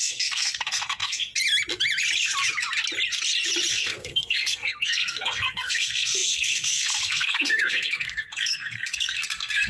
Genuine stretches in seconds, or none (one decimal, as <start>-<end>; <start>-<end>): 1.3-3.7